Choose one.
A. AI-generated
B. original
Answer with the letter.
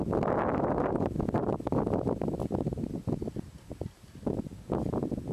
B